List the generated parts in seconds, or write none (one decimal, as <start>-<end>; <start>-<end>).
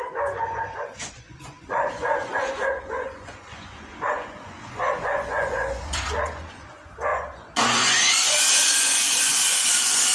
0.0-10.1